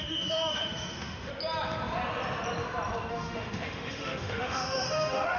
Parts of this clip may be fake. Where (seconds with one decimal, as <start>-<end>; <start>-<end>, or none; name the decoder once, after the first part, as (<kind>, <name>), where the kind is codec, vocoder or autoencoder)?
0.0-1.3 (autoencoder, DAC-VAE); 3.1-5.4